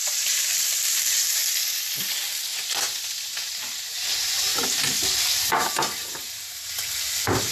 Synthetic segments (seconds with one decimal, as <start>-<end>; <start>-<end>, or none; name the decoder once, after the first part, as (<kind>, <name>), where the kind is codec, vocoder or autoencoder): 0.0-1.4 (vocoder, BigVGAN v2); 3.8-4.5; 5.6-7.5